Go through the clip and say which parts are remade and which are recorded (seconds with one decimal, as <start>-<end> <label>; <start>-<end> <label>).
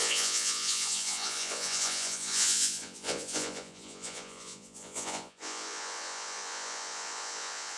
0.0-7.8 remade